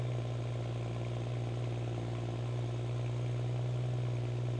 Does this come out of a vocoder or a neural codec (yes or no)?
no